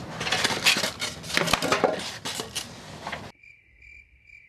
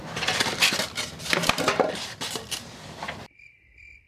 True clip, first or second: first